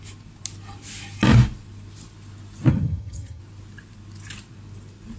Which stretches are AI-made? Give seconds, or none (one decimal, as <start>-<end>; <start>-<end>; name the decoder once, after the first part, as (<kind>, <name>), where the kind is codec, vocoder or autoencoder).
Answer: 2.7-3.4 (vocoder, HiFi-GAN)